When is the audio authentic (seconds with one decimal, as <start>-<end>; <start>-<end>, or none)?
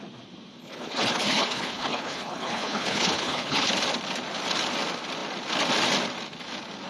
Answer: 0.0-0.6; 3.7-6.9